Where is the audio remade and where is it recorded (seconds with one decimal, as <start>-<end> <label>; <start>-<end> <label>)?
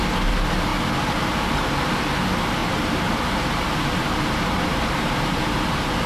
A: 0.0-2.6 recorded; 2.6-6.1 remade